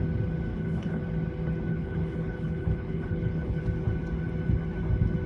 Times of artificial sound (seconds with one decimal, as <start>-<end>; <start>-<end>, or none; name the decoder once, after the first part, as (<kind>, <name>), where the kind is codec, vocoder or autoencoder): 0.5-1.0 (codec, HILCodec); 1.7-3.6